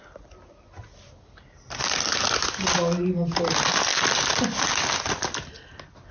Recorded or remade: recorded